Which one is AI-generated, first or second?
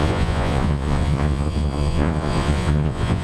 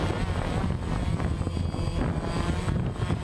first